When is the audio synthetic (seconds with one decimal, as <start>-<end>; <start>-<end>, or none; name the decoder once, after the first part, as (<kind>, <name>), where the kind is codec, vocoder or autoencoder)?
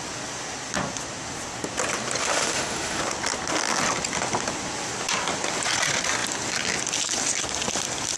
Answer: 2.2-3.0 (autoencoder, DAC-VAE)